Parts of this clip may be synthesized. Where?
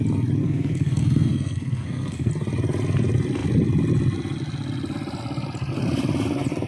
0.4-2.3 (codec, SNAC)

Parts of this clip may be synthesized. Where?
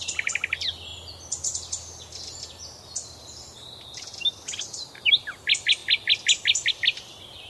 none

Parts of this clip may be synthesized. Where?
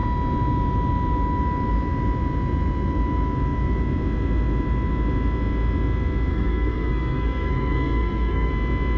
6.3-8.5 (codec, SNAC)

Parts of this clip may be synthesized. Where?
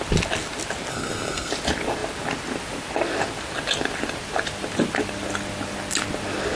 0.9-1.5 (codec, SNAC)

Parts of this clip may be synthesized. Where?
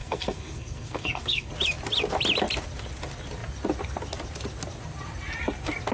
0.0-1.5 (codec, SNAC)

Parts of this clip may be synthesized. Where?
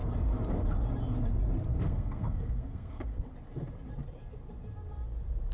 1.7-3.3 (codec, SNAC)